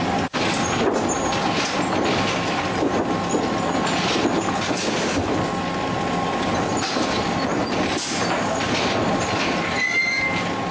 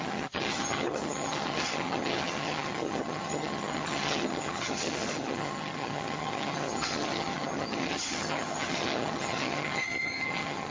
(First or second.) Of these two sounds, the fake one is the second